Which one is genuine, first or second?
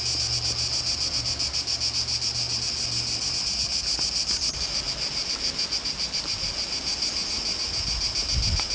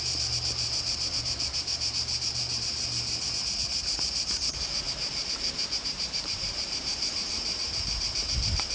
first